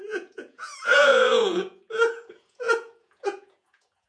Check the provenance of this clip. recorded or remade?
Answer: remade